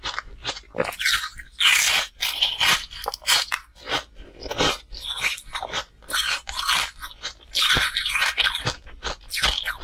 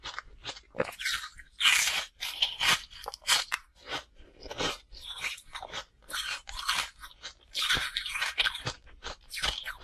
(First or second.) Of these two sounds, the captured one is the first